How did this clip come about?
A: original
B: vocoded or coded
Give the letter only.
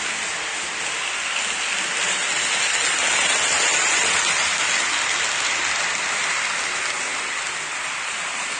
A